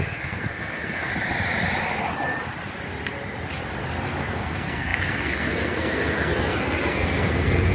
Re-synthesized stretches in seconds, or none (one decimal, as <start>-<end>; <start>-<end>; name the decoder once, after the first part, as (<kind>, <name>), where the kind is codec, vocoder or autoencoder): 0.0-1.1 (codec, SNAC); 4.2-7.7

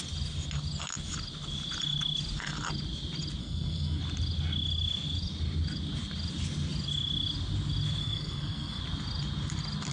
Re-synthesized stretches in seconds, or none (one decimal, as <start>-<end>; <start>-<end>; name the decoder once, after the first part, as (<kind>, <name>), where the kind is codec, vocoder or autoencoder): 3.4-4.0 (codec, SNAC); 8.0-8.8

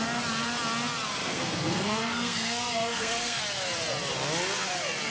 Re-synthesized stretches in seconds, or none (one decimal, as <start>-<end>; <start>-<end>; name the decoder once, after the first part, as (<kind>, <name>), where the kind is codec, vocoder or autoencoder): 1.2-3.4 (codec, SNAC)

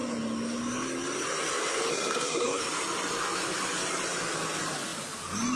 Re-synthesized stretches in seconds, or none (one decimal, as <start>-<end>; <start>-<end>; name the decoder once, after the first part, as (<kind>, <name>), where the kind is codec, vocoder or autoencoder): 1.9-2.6 (codec, SNAC)